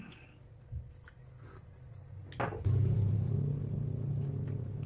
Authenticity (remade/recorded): recorded